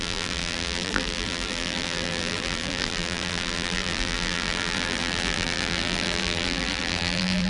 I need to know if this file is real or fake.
fake